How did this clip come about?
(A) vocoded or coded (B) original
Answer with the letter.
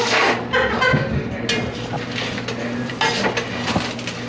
B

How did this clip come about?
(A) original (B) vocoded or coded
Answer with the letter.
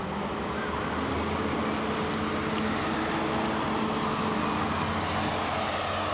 A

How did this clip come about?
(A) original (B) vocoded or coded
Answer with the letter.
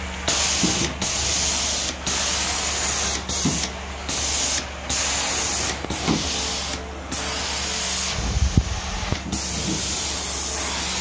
A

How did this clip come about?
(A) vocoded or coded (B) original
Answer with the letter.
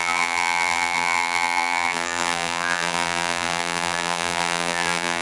A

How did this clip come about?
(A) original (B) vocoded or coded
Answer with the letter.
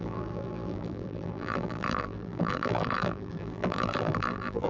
B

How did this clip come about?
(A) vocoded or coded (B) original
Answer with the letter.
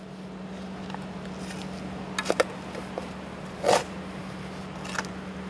B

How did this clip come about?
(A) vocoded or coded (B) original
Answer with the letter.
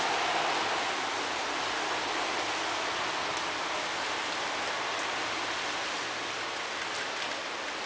B